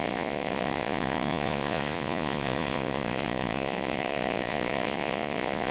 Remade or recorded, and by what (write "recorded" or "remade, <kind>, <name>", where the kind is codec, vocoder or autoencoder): remade, vocoder, Vocos